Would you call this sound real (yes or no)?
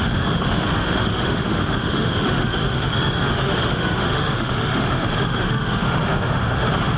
no